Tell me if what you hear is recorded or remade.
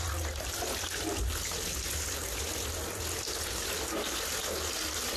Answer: recorded